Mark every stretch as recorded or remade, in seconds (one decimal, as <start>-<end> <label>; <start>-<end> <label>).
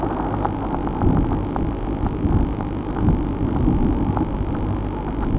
0.0-0.8 recorded; 0.8-3.6 remade; 3.6-5.4 recorded